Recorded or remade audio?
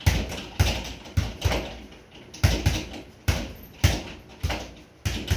recorded